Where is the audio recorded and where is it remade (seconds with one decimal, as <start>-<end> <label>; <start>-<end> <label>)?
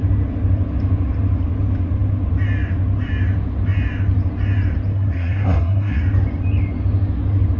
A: 0.0-4.9 recorded; 4.9-6.0 remade; 6.0-7.6 recorded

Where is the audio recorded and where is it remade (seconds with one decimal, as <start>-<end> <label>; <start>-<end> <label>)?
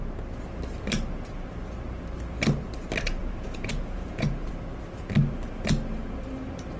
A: 0.0-3.2 recorded; 3.2-4.5 remade; 4.5-6.8 recorded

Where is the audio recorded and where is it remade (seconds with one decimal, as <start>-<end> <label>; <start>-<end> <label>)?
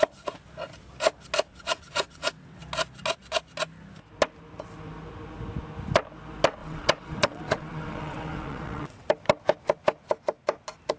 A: 0.0-1.5 recorded; 1.5-2.6 remade; 2.6-6.6 recorded; 6.6-9.1 remade; 9.1-11.0 recorded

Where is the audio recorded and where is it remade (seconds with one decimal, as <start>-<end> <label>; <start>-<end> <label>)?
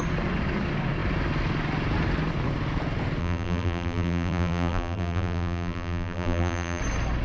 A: 0.0-3.2 recorded; 3.2-6.8 remade; 6.8-7.2 recorded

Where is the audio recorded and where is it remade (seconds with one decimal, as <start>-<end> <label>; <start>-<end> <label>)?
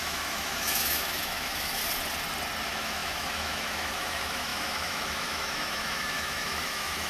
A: 0.0-1.8 remade; 1.8-2.6 recorded; 2.6-7.1 remade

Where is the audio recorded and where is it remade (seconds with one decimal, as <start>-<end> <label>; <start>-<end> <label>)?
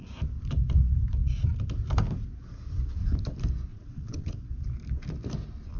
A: 0.0-3.7 recorded; 3.7-4.3 remade; 4.3-5.8 recorded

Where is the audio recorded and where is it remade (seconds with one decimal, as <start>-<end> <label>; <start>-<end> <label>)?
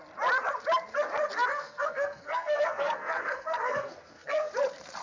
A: 0.0-1.5 recorded; 1.5-4.5 remade; 4.5-5.0 recorded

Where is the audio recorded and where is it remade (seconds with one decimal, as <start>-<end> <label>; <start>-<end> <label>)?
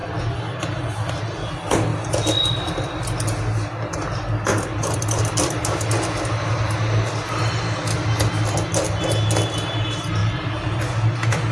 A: 0.0-4.5 recorded; 4.5-5.2 remade; 5.2-10.2 recorded; 10.2-10.8 remade; 10.8-11.5 recorded